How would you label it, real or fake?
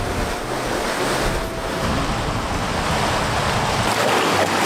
real